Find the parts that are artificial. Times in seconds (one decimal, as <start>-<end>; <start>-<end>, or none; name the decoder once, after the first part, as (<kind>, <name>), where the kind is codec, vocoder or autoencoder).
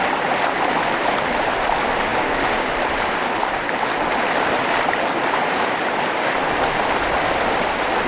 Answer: 2.1-2.7 (codec, DAC)